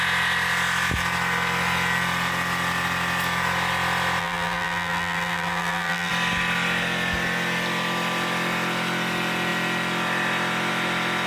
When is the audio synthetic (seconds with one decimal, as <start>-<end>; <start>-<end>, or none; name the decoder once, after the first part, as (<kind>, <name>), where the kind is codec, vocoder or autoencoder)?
4.2-6.1 (vocoder, BigVGAN v2)